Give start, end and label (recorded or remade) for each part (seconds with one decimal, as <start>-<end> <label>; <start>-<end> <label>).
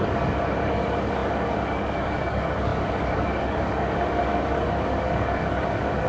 0.0-6.1 remade